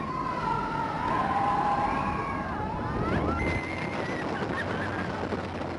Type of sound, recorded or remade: recorded